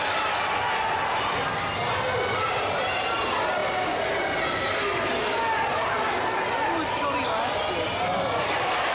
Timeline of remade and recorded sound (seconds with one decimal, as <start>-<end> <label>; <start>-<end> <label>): 0.0-8.9 recorded